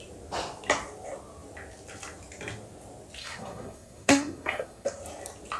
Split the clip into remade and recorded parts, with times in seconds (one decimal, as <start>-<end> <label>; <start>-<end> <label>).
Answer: 0.0-3.2 recorded; 3.2-5.0 remade; 5.0-5.6 recorded

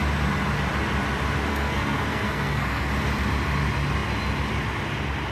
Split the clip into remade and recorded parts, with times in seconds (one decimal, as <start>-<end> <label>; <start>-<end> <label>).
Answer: 0.0-1.5 recorded; 1.5-2.9 remade; 2.9-5.3 recorded

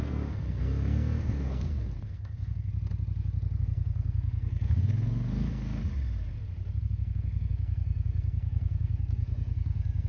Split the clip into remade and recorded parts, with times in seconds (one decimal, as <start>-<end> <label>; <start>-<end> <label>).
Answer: 0.0-2.7 remade; 2.7-3.6 recorded; 3.6-5.8 remade; 5.8-6.8 recorded; 6.8-10.1 remade

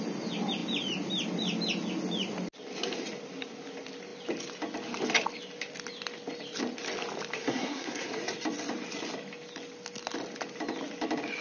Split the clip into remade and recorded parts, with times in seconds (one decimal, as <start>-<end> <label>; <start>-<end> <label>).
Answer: 0.0-7.4 recorded; 7.4-8.1 remade; 8.1-11.4 recorded

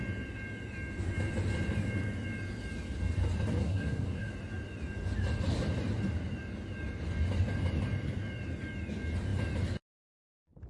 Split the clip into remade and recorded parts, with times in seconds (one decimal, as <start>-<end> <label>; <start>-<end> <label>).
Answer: 0.0-3.6 recorded; 3.6-4.3 remade; 4.3-10.7 recorded

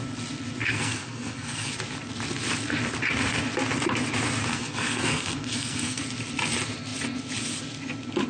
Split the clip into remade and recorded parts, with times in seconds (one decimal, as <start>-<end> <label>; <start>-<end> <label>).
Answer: 0.0-0.6 recorded; 0.6-1.7 remade; 1.7-4.5 recorded; 4.5-6.0 remade; 6.0-8.3 recorded